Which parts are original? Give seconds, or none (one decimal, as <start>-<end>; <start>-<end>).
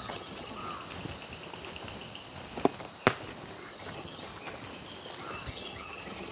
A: 0.6-3.7; 4.3-5.5